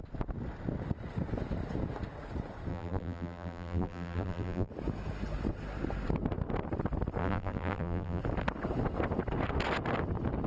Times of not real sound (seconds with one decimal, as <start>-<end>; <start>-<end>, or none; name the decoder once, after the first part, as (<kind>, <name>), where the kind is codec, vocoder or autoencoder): 2.7-4.7 (vocoder, BigVGAN v2); 7.2-8.2